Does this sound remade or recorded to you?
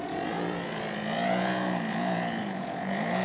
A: remade